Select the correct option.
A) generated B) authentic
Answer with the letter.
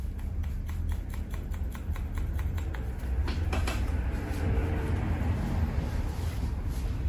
B